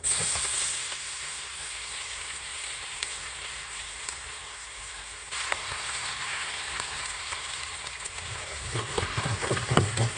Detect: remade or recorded remade